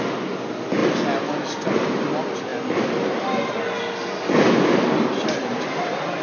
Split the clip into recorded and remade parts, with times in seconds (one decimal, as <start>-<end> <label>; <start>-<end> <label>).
0.0-6.2 recorded